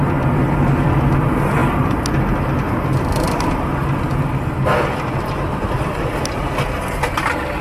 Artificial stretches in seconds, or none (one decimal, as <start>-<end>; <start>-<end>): none